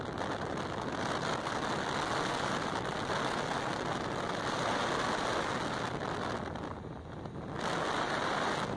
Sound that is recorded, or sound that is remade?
recorded